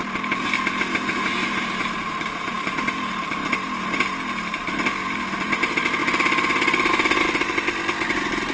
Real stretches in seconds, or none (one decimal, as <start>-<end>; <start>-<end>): 0.0-8.5